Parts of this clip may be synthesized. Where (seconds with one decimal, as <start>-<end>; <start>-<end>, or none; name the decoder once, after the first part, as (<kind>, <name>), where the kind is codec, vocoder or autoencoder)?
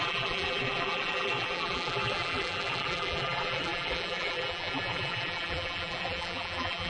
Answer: 0.0-6.9 (vocoder, BigVGAN v2)